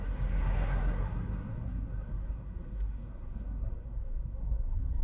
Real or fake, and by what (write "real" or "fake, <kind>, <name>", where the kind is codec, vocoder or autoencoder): fake, codec, SNAC